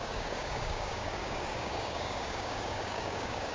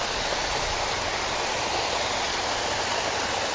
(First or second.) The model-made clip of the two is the first